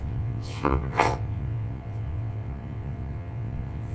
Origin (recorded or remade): remade